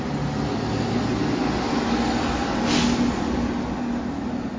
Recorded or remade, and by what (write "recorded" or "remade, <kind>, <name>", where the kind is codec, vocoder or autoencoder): recorded